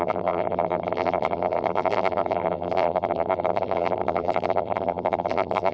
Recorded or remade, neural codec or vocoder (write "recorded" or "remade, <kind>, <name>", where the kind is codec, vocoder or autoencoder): remade, vocoder, BigVGAN v2